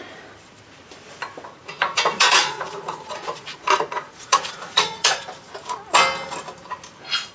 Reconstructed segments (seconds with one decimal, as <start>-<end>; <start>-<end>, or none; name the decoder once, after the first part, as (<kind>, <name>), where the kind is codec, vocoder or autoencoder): 1.6-5.2 (vocoder, Vocos)